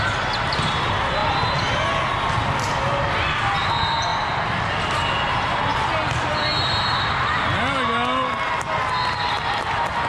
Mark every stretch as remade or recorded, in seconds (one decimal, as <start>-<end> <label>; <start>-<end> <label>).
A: 0.0-10.1 recorded